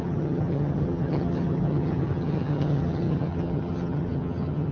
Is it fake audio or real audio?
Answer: fake